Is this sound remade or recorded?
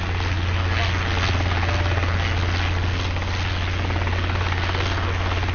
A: recorded